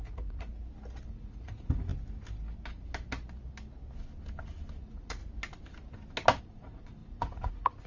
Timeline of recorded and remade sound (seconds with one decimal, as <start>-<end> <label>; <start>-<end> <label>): 0.0-0.5 remade; 0.5-1.1 recorded; 1.1-1.9 remade; 1.9-4.8 recorded; 4.8-5.2 remade; 5.2-6.4 recorded; 6.4-7.9 remade